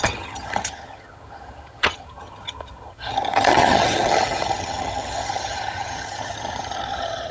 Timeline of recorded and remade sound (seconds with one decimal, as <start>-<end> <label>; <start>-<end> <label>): 0.0-7.3 remade

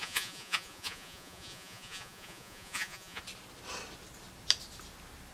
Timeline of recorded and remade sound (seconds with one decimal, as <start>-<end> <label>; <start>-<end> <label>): 0.0-3.2 remade; 3.2-5.3 recorded

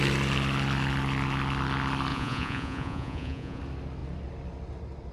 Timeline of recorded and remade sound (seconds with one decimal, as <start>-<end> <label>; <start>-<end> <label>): 0.0-2.1 recorded; 2.1-3.6 remade; 3.6-5.1 recorded

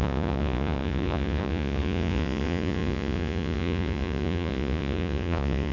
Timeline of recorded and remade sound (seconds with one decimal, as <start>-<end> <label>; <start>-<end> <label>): 0.0-5.7 remade

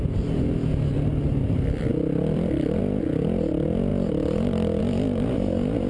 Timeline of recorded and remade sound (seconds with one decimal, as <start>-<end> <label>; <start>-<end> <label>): 0.0-1.9 recorded; 1.9-2.8 remade; 2.8-3.9 recorded; 3.9-4.8 remade; 4.8-5.9 recorded

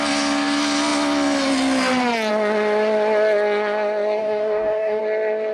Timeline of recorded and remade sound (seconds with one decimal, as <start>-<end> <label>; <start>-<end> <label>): 0.0-4.2 recorded; 4.2-5.0 remade; 5.0-5.5 recorded

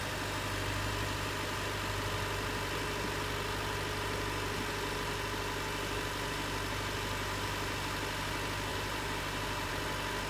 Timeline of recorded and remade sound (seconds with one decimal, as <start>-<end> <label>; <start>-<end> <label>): 0.0-8.7 recorded; 8.7-9.7 remade; 9.7-10.3 recorded